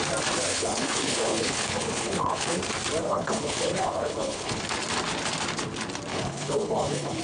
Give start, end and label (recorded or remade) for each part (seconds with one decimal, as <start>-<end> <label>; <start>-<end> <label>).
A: 0.0-0.5 recorded; 0.5-2.6 remade; 2.6-3.0 recorded; 3.0-4.6 remade; 4.6-6.1 recorded; 6.1-7.2 remade